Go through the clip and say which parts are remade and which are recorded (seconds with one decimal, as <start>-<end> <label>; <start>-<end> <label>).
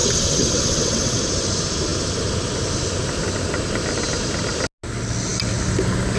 0.0-1.2 remade; 1.2-6.2 recorded